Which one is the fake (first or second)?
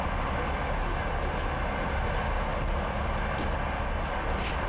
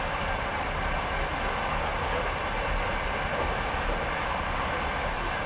second